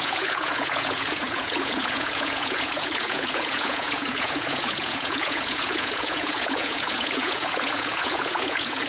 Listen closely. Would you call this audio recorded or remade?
remade